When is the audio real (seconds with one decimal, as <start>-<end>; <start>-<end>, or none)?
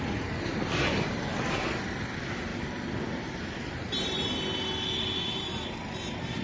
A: 0.0-6.4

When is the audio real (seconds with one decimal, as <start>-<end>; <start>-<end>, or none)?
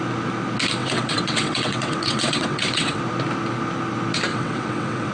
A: 0.0-0.8; 3.0-4.3